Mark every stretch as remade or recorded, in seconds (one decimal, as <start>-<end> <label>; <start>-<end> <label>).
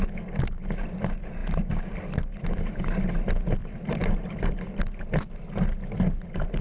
0.0-3.6 recorded; 3.6-5.0 remade; 5.0-6.6 recorded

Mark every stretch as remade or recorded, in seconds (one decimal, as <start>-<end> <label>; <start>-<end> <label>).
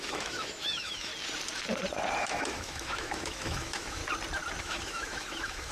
0.0-1.1 remade; 1.1-2.2 recorded; 2.2-4.0 remade; 4.0-4.6 recorded; 4.6-5.7 remade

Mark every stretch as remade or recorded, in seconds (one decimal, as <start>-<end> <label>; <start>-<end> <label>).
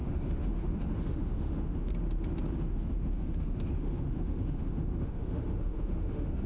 0.0-1.9 remade; 1.9-2.7 recorded; 2.7-6.5 remade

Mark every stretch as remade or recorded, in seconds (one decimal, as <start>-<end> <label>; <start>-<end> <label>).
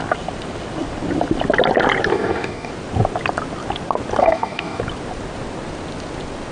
0.0-2.1 recorded; 2.1-2.7 remade; 2.7-4.2 recorded; 4.2-4.8 remade; 4.8-6.5 recorded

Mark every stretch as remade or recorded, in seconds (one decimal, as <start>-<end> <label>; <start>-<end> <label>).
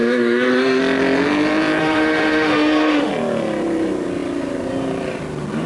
0.0-0.8 remade; 0.8-1.8 recorded; 1.8-3.1 remade; 3.1-5.7 recorded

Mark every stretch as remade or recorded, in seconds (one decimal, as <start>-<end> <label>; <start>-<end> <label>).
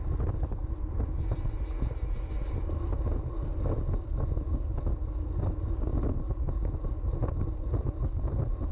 0.0-8.7 recorded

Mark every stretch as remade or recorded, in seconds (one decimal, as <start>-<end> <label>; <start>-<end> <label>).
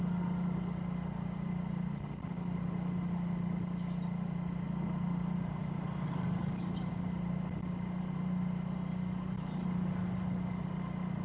0.0-11.2 recorded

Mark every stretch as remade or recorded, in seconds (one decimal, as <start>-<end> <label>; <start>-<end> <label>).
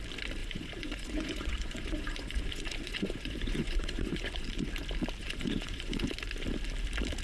0.0-0.4 recorded; 0.4-4.7 remade; 4.7-5.2 recorded; 5.2-6.1 remade; 6.1-7.2 recorded